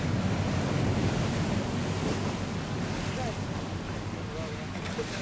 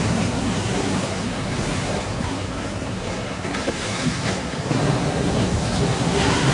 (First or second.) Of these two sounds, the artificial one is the second